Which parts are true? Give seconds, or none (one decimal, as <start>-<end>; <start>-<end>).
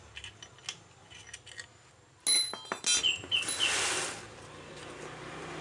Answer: 0.0-5.6